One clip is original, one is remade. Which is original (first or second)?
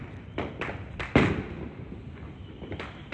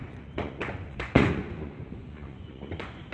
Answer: first